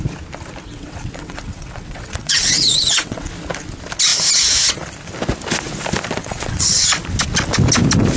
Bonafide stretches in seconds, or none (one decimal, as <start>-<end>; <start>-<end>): 0.0-0.7; 3.3-6.2; 6.9-8.2